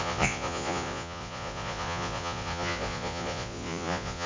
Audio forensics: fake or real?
fake